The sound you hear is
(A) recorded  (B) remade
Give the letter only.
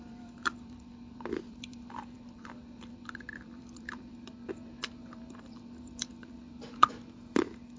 B